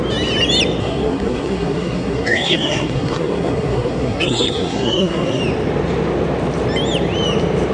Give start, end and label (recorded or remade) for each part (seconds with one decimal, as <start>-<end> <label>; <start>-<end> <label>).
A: 0.0-0.8 recorded; 0.8-5.4 remade; 5.4-7.7 recorded